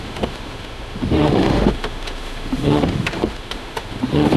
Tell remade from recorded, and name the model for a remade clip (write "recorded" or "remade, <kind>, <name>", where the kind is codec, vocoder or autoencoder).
remade, autoencoder, DAC-VAE